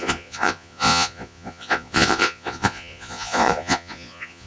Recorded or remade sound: remade